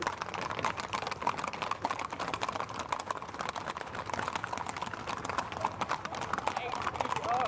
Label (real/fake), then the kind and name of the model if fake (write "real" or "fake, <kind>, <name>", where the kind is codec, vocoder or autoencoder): real